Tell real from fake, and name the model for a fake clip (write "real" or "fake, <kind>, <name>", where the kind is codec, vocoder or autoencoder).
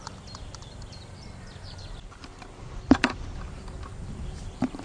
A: fake, vocoder, BigVGAN v2